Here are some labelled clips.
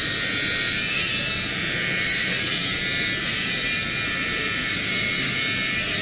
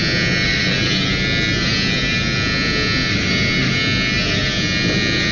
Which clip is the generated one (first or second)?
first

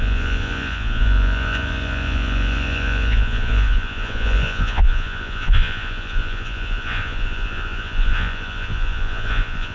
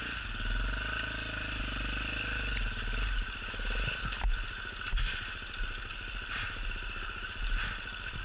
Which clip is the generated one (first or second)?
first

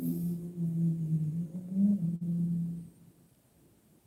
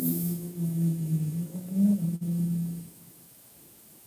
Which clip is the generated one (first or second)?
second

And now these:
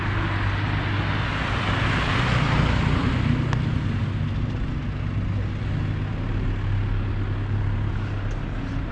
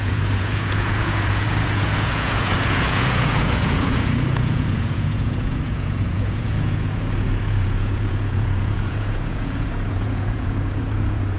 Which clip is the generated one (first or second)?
second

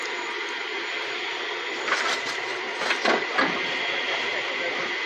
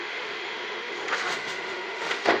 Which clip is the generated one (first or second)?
second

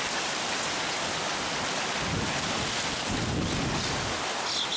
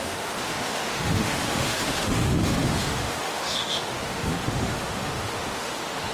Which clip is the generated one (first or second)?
second